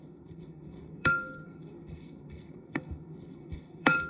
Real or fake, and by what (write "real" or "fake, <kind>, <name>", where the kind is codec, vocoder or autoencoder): fake, codec, SNAC